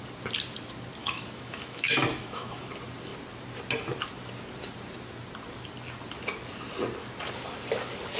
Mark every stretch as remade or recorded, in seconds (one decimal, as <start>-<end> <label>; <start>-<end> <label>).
0.0-1.0 recorded; 1.0-2.7 remade; 2.7-8.2 recorded

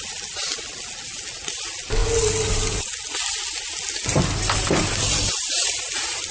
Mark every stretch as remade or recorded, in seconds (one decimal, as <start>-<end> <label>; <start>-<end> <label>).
0.0-6.3 recorded

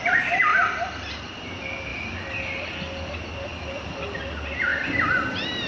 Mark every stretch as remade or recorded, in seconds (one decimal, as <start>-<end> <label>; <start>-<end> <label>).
0.0-0.5 recorded; 0.5-1.5 remade; 1.5-1.9 recorded; 1.9-3.1 remade; 3.1-3.5 recorded; 3.5-4.2 remade; 4.2-4.7 recorded; 4.7-5.7 remade

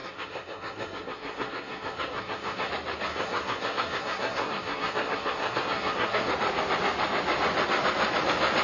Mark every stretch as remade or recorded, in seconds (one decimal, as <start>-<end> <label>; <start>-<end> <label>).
0.0-2.7 remade; 2.7-3.1 recorded; 3.1-6.3 remade; 6.3-8.6 recorded